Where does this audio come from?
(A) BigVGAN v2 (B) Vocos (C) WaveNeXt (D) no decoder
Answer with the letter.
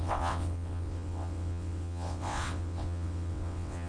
C